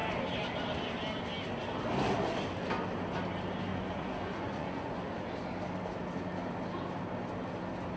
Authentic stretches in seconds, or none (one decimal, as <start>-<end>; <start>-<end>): 0.0-3.7; 5.1-8.0